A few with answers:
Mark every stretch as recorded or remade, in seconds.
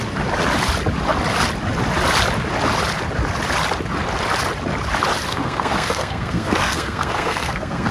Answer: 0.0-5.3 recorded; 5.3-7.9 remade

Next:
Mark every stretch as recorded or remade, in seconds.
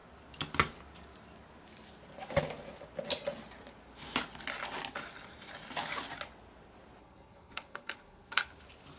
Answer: 0.0-7.0 recorded; 7.0-8.5 remade; 8.5-9.0 recorded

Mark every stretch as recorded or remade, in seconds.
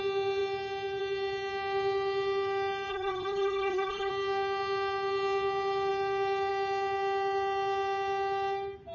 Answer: 0.0-2.9 recorded; 2.9-4.1 remade; 4.1-8.9 recorded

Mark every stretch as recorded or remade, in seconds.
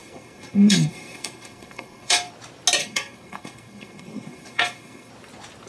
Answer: 0.0-2.3 remade; 2.3-2.8 recorded; 2.8-5.1 remade; 5.1-5.7 recorded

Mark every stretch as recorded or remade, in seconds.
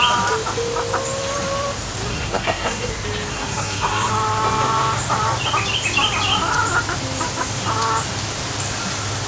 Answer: 0.0-2.1 recorded; 2.1-2.9 remade; 2.9-3.3 recorded; 3.3-4.1 remade; 4.1-9.3 recorded